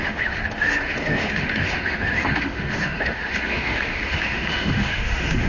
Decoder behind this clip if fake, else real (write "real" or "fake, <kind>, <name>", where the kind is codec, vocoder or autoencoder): fake, autoencoder, DAC-VAE